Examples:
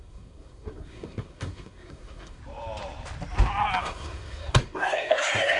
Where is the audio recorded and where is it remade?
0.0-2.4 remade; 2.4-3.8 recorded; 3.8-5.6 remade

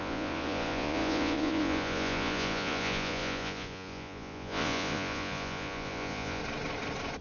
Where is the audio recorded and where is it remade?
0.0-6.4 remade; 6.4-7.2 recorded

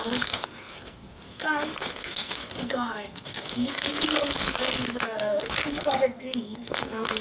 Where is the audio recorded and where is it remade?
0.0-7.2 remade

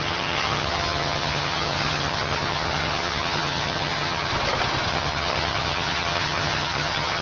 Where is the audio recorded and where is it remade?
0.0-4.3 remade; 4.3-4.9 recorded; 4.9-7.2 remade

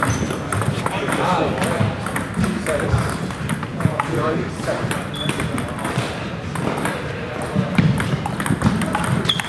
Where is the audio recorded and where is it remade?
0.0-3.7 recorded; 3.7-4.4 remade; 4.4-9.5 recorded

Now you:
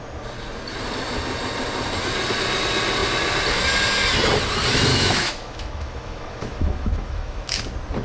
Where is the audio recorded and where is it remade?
0.0-4.9 recorded; 4.9-7.6 remade; 7.6-8.0 recorded

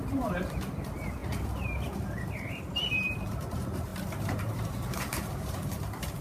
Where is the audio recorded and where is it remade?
0.0-6.2 remade